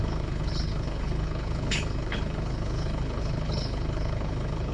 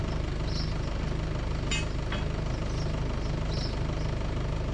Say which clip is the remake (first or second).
first